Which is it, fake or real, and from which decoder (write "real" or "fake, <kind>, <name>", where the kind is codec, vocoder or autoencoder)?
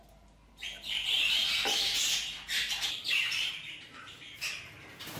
fake, vocoder, BigVGAN v2